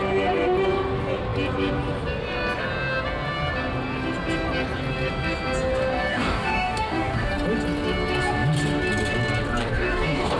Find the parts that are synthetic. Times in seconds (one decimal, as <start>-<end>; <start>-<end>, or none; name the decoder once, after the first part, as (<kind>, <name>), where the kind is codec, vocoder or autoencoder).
6.1-7.3 (codec, DAC); 9.6-10.4